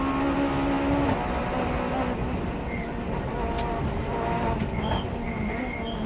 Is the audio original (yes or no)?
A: yes